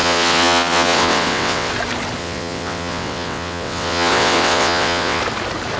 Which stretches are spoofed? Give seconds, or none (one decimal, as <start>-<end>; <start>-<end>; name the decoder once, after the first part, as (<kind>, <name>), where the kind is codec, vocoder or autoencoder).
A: 0.0-1.7 (vocoder, WaveNeXt); 2.2-5.2